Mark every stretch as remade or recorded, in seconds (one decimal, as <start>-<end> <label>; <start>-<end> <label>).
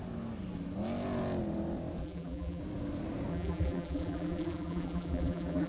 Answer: 0.0-2.0 recorded; 2.0-2.6 remade; 2.6-3.3 recorded; 3.3-5.7 remade